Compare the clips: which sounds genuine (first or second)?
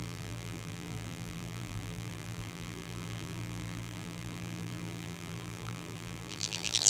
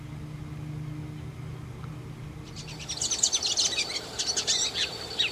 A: second